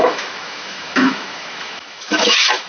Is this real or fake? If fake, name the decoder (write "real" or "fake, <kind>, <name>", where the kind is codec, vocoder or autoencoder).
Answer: fake, autoencoder, DAC-VAE